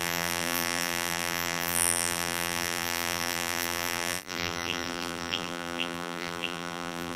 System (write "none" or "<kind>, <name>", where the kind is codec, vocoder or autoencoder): vocoder, BigVGAN v2